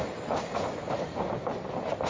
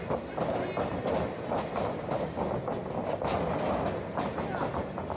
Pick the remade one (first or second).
first